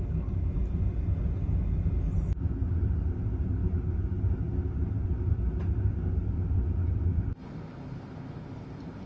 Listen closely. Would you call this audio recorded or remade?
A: recorded